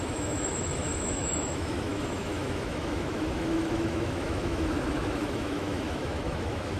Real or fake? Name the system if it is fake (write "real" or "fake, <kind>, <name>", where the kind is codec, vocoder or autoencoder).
fake, autoencoder, DAC-VAE